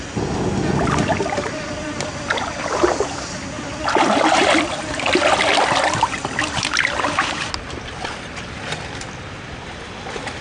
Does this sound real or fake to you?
real